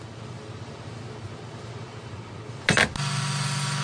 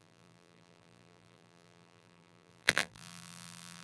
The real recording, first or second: first